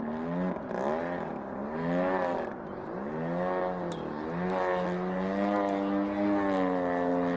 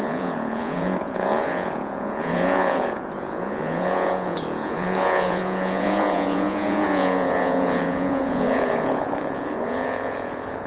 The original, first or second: first